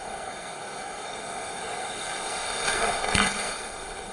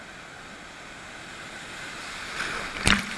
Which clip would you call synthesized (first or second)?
first